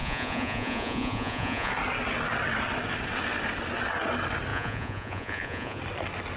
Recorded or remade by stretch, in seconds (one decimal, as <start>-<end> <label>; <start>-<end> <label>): 0.0-1.7 remade; 1.7-4.5 recorded; 4.5-5.8 remade; 5.8-6.4 recorded